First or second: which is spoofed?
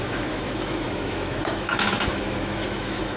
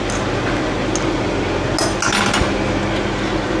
first